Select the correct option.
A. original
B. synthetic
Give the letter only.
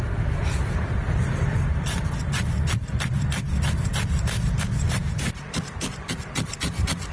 B